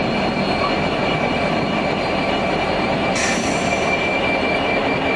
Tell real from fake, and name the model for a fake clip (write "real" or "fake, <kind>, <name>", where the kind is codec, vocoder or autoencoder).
real